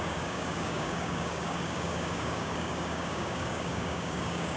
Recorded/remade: remade